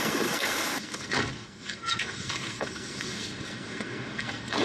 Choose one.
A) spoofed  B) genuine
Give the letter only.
A